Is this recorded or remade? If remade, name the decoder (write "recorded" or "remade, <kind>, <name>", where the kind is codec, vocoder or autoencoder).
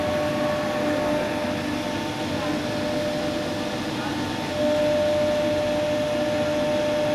recorded